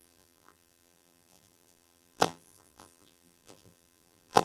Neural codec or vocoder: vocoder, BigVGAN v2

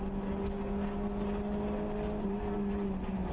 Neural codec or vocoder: none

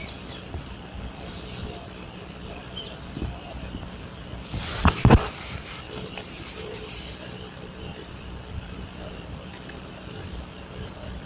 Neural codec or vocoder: vocoder, BigVGAN v2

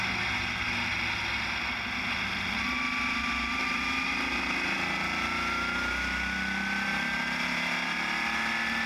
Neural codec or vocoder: none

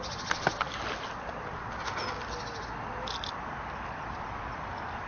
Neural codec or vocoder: none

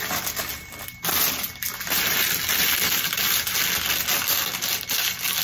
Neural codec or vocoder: none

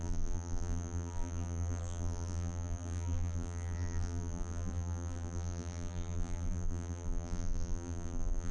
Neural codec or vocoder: vocoder, BigVGAN v2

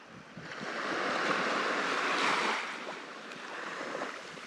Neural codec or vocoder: none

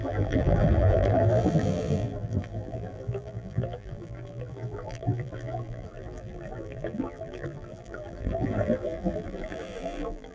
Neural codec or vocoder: vocoder, BigVGAN v2